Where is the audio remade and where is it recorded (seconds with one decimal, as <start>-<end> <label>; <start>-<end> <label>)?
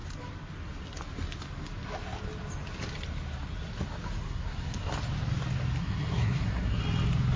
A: 0.0-4.2 recorded; 4.2-4.9 remade; 4.9-5.8 recorded; 5.8-6.8 remade; 6.8-7.4 recorded